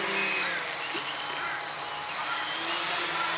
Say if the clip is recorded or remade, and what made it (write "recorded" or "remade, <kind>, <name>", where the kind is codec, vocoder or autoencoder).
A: recorded